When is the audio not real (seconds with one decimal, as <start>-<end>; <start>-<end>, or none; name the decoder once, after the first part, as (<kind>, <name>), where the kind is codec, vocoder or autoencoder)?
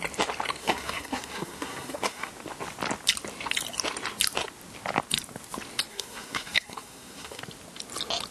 0.6-2.3 (codec, SNAC); 5.9-7.4